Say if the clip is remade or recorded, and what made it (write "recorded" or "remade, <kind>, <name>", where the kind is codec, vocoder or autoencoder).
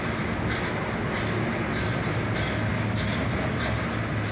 recorded